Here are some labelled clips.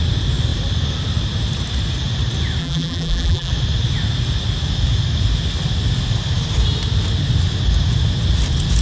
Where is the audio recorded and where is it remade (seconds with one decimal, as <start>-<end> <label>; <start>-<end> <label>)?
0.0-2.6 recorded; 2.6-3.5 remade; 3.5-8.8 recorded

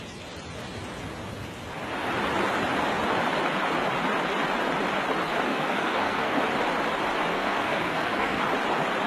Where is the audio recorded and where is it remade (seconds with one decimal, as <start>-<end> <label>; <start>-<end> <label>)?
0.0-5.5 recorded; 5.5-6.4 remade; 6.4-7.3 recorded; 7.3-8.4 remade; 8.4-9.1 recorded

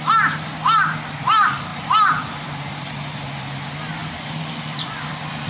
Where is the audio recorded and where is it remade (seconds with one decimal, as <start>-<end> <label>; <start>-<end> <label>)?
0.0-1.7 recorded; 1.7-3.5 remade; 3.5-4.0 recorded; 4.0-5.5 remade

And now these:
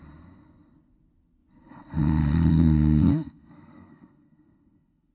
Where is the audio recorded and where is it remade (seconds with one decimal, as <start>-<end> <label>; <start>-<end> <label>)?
0.0-2.5 recorded; 2.5-5.1 remade

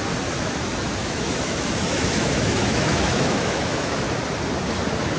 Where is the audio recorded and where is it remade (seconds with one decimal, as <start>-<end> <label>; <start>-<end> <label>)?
0.0-1.0 recorded; 1.0-4.1 remade; 4.1-5.2 recorded

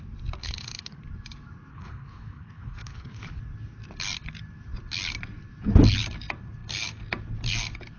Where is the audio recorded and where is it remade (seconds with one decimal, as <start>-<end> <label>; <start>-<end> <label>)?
0.0-0.4 recorded; 0.4-1.0 remade; 1.0-1.7 recorded; 1.7-3.4 remade; 3.4-8.0 recorded